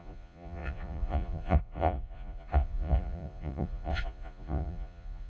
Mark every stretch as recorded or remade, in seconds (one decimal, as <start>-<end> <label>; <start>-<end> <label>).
0.0-5.3 remade